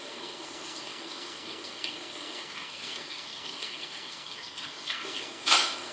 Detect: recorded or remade remade